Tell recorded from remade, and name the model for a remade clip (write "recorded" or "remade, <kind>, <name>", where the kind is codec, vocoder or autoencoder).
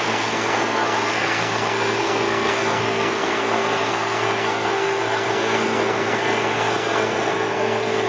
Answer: remade, codec, SNAC